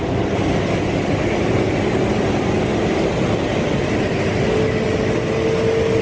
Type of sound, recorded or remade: recorded